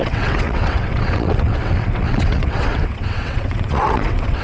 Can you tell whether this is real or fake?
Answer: fake